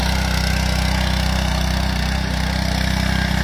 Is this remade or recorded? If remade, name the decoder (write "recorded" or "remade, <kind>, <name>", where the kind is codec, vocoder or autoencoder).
recorded